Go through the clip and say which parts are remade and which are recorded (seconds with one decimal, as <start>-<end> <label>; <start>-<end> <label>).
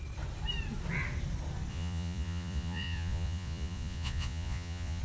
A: 0.0-1.7 recorded; 1.7-5.0 remade